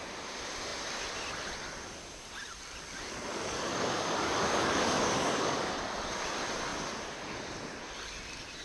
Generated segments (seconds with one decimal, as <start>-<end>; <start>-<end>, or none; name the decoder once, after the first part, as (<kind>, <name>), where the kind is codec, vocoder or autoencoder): 3.3-5.8 (codec, DAC)

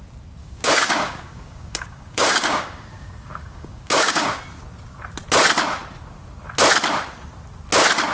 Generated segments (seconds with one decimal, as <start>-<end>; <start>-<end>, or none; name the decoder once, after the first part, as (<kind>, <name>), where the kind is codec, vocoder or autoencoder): 0.4-4.4 (codec, DAC)

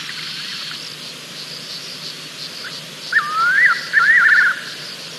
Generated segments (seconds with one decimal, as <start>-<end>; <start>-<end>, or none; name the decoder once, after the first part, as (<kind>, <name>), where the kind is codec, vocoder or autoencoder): none